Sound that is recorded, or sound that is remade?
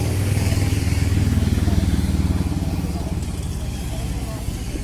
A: remade